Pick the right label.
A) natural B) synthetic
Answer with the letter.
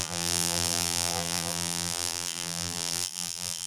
B